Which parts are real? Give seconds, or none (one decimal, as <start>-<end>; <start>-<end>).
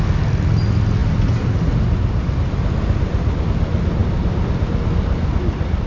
0.0-5.9